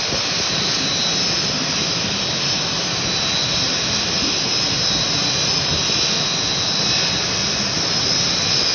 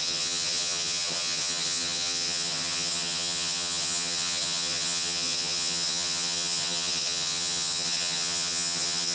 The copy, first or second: second